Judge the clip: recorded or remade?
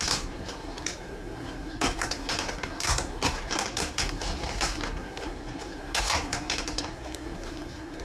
remade